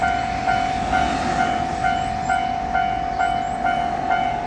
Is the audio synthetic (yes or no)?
no